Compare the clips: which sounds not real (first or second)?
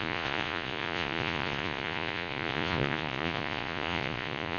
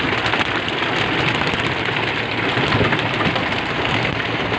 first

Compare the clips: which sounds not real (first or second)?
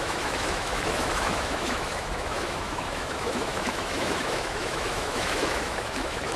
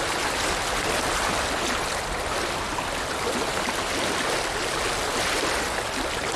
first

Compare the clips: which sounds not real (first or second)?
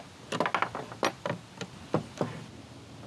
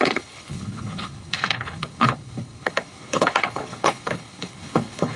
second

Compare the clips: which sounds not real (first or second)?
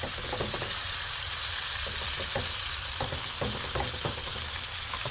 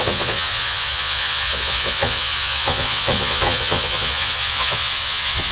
second